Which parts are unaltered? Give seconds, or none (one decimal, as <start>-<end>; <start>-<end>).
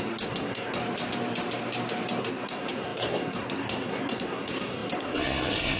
0.8-2.2